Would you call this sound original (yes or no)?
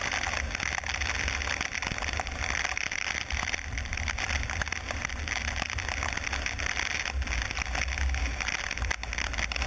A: yes